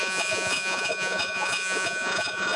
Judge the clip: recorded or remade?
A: remade